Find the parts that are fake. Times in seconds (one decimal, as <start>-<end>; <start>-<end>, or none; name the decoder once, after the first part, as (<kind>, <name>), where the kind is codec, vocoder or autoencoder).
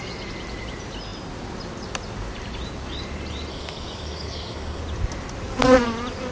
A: 3.5-4.8 (codec, DAC)